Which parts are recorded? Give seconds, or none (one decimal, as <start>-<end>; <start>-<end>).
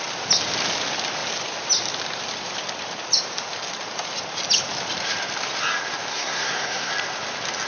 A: 0.0-6.1; 6.9-7.7